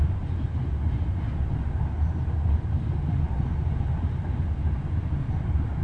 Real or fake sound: real